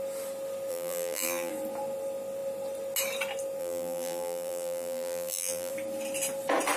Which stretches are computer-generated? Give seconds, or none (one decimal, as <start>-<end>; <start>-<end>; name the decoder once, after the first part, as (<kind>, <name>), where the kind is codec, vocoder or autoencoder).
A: 0.7-1.5 (vocoder, BigVGAN v2); 3.6-5.7